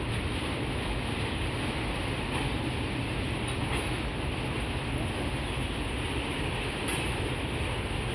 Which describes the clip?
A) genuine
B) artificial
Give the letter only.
A